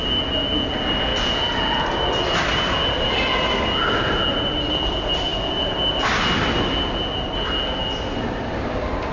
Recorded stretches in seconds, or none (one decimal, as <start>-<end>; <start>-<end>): 0.0-9.1

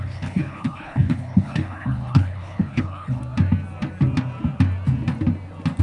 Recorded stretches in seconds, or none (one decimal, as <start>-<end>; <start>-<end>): 3.2-5.8

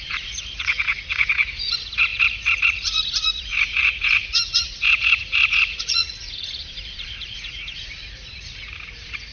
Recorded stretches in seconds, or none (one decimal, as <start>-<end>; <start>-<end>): 6.6-7.1